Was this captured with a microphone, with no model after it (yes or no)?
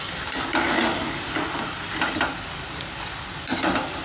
yes